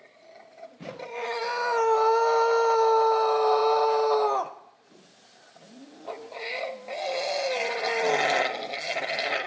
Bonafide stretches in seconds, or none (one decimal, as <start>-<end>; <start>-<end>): 0.0-0.5; 1.4-9.5